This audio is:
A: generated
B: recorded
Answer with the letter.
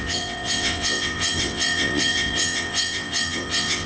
A